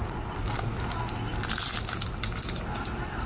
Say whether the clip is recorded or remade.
recorded